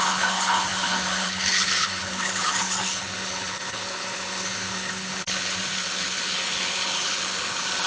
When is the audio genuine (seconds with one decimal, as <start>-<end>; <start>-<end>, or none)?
none